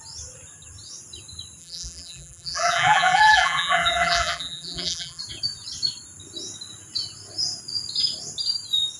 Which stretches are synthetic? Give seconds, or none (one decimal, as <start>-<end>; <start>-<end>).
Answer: 1.6-5.2